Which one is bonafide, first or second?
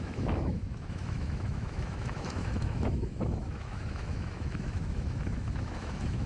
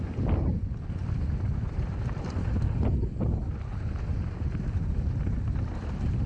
second